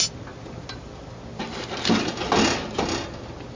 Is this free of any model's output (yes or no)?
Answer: yes